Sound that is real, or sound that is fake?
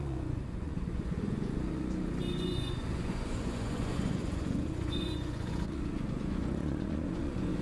fake